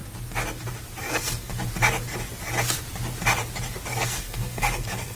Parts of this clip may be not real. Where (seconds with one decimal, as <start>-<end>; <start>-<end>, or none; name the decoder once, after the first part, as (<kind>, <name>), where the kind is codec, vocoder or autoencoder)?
1.0-1.5 (codec, SNAC); 3.9-5.1